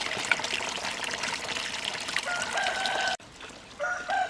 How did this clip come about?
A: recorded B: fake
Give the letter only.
A